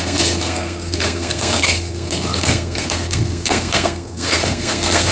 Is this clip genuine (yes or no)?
no